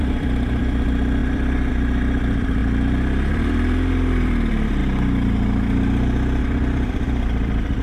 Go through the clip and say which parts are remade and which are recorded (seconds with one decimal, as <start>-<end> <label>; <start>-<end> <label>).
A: 0.0-2.6 remade; 2.6-3.3 recorded; 3.3-4.8 remade; 4.8-6.4 recorded; 6.4-7.8 remade